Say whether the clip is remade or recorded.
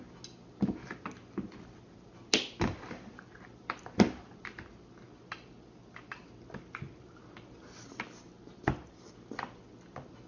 recorded